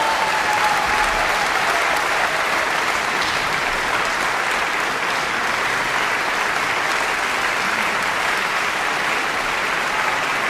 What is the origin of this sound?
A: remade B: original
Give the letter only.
B